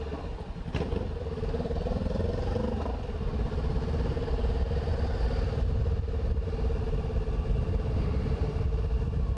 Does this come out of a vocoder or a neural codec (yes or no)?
yes